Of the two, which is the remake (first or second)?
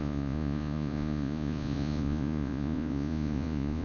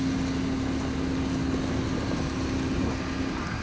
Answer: first